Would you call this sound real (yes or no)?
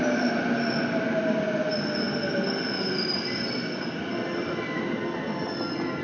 yes